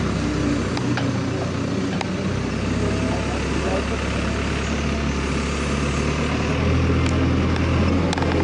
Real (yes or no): yes